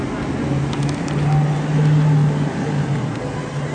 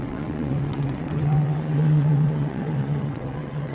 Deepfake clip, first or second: second